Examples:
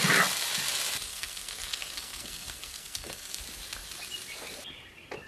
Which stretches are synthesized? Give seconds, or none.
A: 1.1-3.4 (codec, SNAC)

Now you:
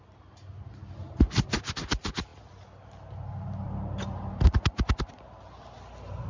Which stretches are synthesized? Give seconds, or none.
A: none

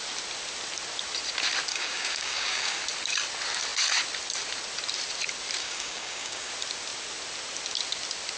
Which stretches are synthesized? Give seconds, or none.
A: 1.7-2.8 (codec, DAC); 5.6-6.5

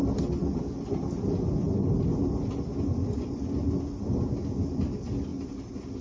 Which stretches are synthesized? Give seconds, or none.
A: none

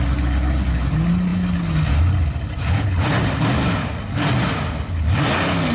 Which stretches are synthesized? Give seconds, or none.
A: none

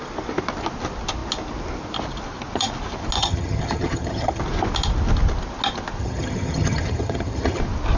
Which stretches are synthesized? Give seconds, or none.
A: 3.2-4.4 (vocoder, HiFi-GAN); 6.0-7.6

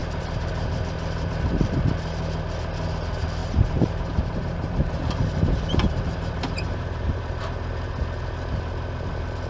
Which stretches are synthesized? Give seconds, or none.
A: 0.0-0.5 (vocoder, BigVGAN v2); 3.4-7.4